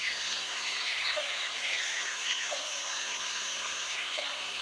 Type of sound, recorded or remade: remade